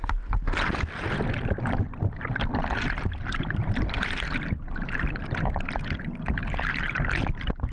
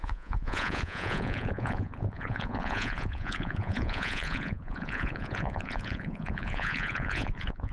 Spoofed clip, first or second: second